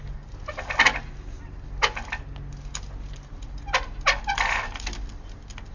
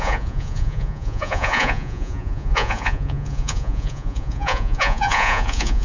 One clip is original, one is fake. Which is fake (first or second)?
second